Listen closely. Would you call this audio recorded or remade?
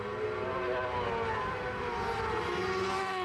recorded